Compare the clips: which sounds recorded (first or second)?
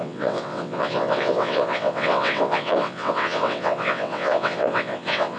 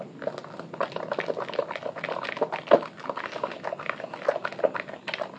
second